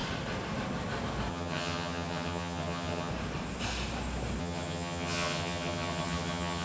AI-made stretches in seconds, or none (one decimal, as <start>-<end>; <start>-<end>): 1.3-3.1; 4.4-6.6

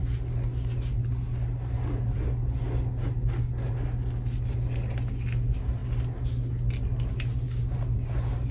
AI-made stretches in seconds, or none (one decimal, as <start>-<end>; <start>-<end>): none

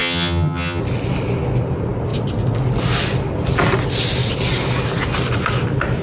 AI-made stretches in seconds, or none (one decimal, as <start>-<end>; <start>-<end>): 0.0-0.8

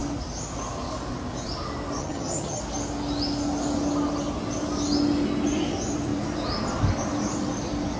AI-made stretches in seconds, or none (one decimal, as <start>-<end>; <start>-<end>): 2.0-2.6

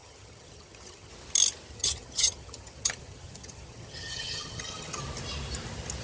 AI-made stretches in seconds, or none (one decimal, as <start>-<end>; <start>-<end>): 0.0-1.1; 1.7-5.0

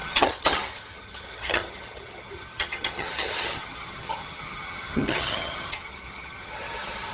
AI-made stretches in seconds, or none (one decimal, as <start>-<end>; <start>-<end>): 0.0-7.1